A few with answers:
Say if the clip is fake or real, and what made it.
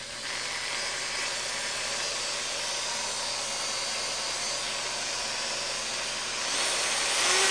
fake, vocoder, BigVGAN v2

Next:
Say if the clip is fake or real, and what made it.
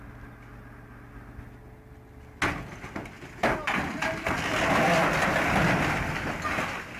real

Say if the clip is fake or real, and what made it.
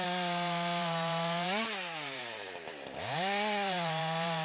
fake, vocoder, BigVGAN v2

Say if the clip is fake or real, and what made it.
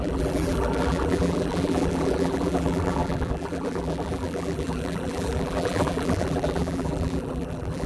fake, vocoder, BigVGAN v2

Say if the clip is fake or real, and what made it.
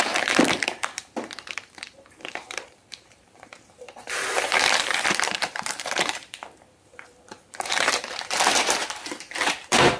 fake, vocoder, BigVGAN v2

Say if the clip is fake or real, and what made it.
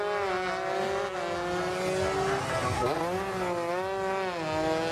real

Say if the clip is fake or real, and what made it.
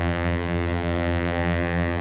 fake, vocoder, BigVGAN v2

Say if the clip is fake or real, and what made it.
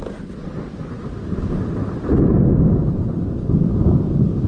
real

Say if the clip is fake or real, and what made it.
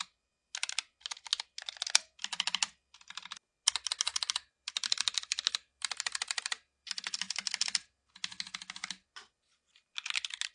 real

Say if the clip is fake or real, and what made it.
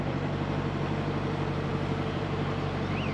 fake, vocoder, BigVGAN v2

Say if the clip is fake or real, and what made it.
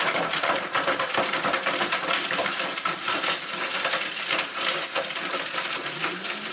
fake, vocoder, BigVGAN v2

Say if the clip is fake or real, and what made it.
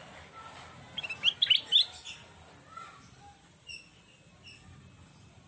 real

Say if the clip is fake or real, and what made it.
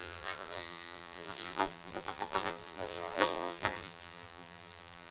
fake, vocoder, BigVGAN v2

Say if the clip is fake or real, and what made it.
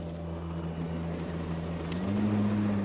real